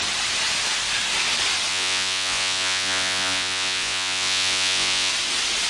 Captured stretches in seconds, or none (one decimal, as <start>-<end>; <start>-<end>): 0.0-1.7; 5.1-5.7